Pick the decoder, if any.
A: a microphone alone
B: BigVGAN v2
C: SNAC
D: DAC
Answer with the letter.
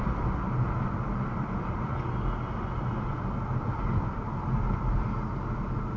A